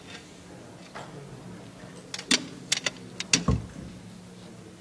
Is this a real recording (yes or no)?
yes